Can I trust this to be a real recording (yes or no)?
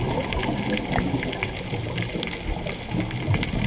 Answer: yes